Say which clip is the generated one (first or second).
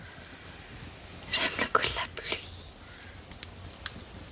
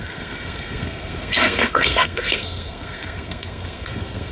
second